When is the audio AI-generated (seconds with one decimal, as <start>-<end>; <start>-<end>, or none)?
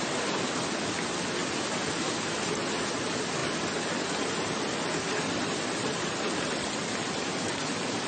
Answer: 3.4-7.6